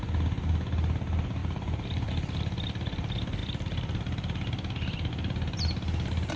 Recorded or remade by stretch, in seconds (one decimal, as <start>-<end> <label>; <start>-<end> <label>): 0.0-1.4 recorded; 1.4-2.1 remade; 2.1-6.4 recorded